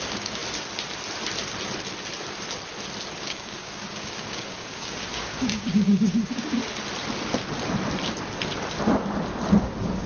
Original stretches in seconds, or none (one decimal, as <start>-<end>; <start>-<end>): 0.4-3.2; 6.6-9.6